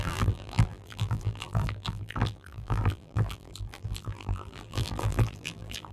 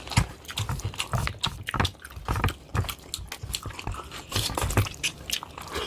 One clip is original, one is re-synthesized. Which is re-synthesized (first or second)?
first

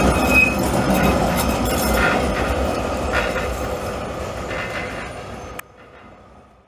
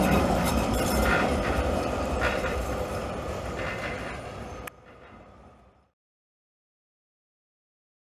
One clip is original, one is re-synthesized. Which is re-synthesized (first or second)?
second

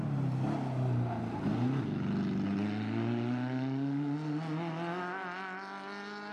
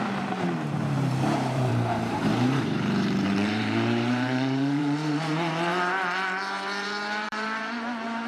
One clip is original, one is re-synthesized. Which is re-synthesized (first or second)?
second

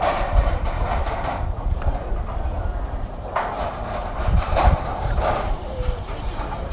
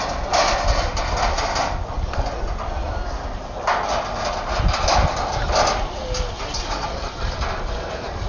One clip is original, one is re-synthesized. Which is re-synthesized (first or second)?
first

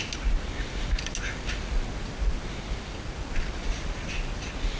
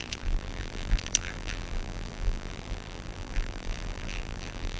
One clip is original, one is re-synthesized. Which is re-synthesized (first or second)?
second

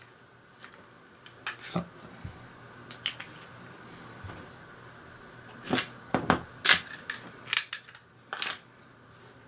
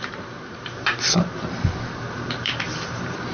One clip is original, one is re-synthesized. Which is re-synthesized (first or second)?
second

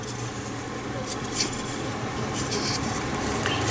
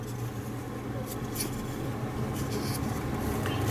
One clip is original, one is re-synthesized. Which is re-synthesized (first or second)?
first